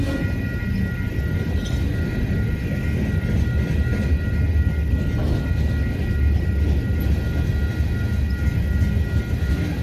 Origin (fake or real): real